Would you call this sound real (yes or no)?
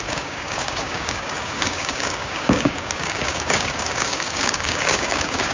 no